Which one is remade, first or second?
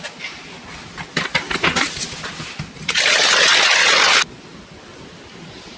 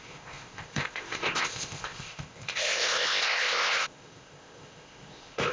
second